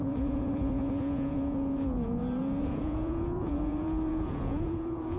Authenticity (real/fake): fake